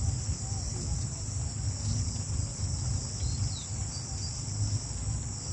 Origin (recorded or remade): recorded